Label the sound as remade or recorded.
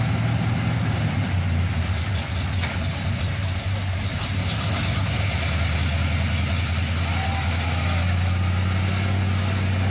recorded